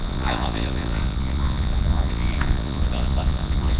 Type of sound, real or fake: fake